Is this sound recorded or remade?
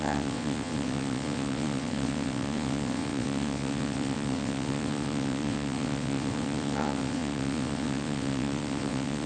remade